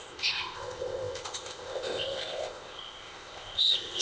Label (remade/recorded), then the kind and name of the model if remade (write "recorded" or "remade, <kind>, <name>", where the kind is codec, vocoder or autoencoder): remade, codec, ZipCodec